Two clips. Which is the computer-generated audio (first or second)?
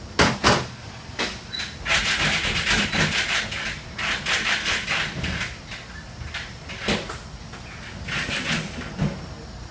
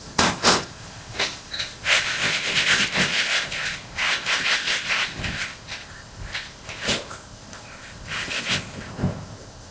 second